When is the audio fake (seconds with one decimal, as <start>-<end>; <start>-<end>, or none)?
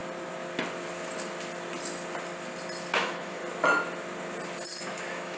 3.0-3.4; 4.8-5.4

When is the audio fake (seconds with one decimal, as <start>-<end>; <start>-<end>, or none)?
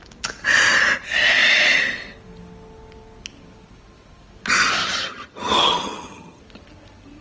4.8-6.4